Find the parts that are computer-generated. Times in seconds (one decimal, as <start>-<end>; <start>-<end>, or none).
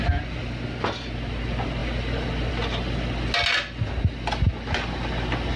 none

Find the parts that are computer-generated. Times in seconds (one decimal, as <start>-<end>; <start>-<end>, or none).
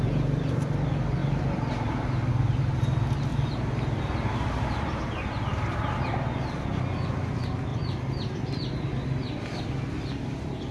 3.3-4.0; 7.7-10.7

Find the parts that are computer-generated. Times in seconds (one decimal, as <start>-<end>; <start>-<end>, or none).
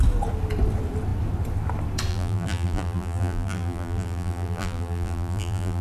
2.1-5.8